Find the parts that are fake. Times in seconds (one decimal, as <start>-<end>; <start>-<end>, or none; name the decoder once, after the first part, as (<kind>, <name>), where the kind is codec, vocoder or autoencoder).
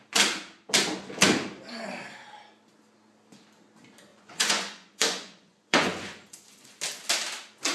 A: 4.1-6.8 (vocoder, Vocos)